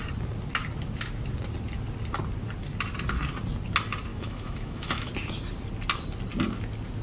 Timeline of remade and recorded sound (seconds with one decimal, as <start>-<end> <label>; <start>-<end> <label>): 0.0-4.1 recorded; 4.1-5.1 remade; 5.1-7.0 recorded